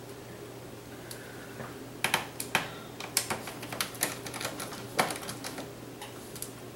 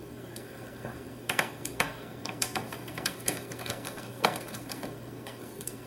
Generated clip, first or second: second